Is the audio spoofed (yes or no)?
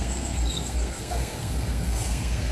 yes